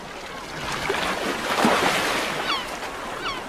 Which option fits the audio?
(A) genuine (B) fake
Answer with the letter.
A